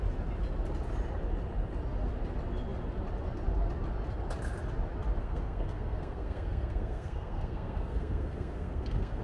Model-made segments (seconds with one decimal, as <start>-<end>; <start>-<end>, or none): 5.2-9.2

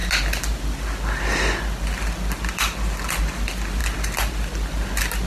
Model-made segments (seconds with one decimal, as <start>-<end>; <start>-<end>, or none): none

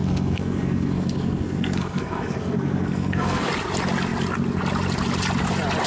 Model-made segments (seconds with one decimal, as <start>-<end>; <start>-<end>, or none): 0.0-3.5

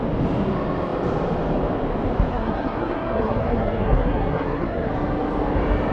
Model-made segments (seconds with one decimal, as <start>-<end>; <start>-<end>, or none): 2.3-4.9

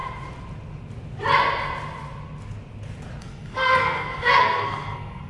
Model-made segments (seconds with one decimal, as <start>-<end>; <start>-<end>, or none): 3.2-5.3